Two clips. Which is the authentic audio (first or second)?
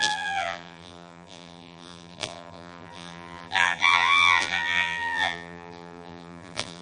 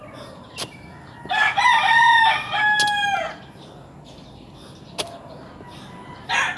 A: second